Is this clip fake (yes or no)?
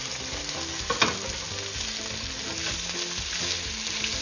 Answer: no